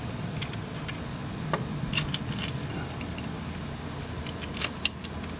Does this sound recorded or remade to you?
recorded